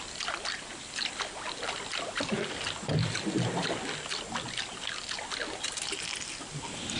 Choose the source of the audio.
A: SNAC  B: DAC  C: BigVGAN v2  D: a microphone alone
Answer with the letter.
D